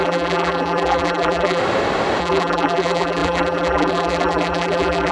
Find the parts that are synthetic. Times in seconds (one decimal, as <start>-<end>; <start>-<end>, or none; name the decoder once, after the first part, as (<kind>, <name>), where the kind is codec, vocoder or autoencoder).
0.0-1.6 (vocoder, BigVGAN v2); 2.2-5.1